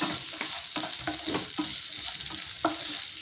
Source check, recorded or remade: recorded